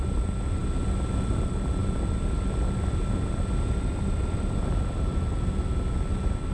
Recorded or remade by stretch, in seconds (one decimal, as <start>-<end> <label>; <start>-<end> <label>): 0.0-6.5 recorded